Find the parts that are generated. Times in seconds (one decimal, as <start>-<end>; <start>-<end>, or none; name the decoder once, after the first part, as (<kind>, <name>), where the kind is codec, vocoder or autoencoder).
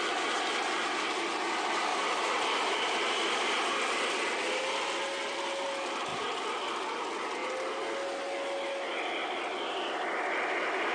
1.9-5.4 (vocoder, BigVGAN v2)